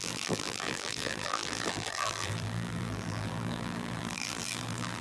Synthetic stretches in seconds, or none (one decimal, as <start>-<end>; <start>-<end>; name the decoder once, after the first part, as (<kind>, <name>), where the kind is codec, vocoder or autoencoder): 0.0-5.0 (vocoder, BigVGAN v2)